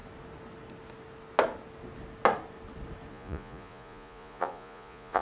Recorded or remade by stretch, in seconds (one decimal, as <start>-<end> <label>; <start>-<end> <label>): 0.0-3.1 recorded; 3.1-5.2 remade